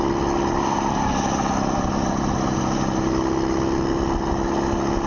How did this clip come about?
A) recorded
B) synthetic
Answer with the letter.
A